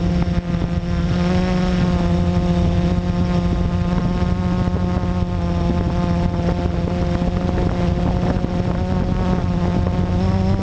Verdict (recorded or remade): recorded